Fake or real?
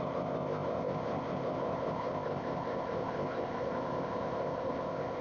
fake